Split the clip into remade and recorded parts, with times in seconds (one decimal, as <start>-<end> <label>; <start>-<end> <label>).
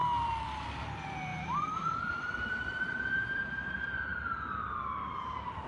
0.0-5.7 remade